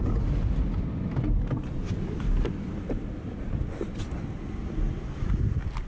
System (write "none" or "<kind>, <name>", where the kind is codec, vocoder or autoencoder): none